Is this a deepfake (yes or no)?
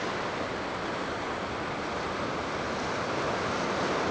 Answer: no